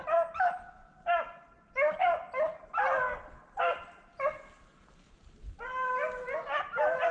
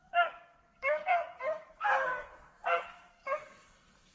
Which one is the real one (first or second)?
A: first